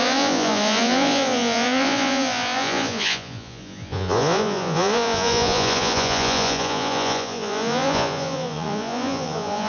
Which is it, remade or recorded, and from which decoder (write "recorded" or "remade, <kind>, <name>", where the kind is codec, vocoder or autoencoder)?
remade, vocoder, Vocos